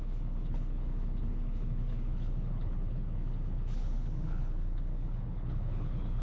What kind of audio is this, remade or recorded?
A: remade